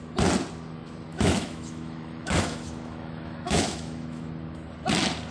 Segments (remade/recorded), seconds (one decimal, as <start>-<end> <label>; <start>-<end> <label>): 0.0-1.1 recorded; 1.1-4.3 remade; 4.3-5.3 recorded

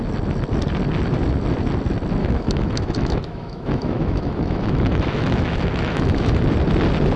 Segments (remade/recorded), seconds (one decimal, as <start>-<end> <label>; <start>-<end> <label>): 0.0-2.2 recorded; 2.2-6.4 remade; 6.4-7.2 recorded

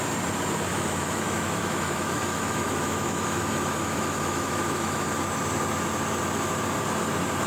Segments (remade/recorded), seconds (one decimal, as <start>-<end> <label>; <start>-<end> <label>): 0.0-0.7 recorded; 0.7-5.2 remade; 5.2-7.5 recorded

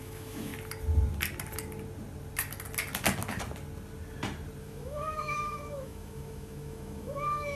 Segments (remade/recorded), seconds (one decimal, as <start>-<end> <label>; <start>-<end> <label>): 0.0-0.5 remade; 0.5-4.6 recorded; 4.6-7.6 remade

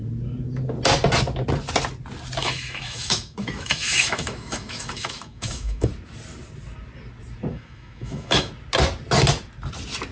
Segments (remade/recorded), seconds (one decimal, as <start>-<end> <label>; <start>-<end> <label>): 0.0-2.4 recorded; 2.4-5.9 remade; 5.9-7.5 recorded; 7.5-8.5 remade; 8.5-10.1 recorded

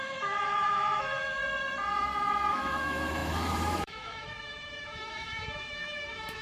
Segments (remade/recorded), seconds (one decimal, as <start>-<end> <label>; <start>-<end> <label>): 0.0-1.4 remade; 1.4-2.5 recorded; 2.5-6.4 remade